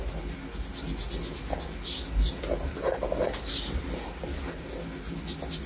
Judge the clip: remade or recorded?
recorded